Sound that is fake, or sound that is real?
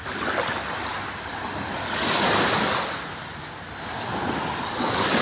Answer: real